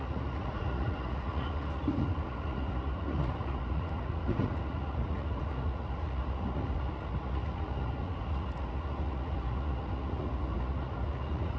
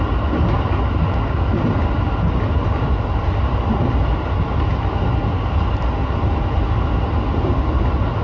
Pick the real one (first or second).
second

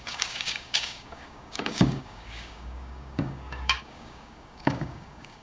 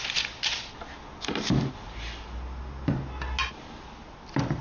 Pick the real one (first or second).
second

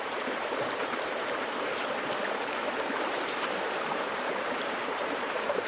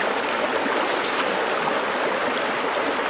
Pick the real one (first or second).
second